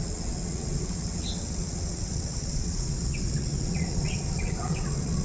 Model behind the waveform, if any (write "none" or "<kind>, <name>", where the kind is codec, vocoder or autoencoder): vocoder, WaveNeXt